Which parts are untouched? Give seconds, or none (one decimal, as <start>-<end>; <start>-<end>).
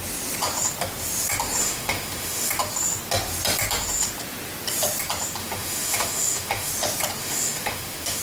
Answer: 0.0-1.6; 2.5-5.4; 6.7-7.2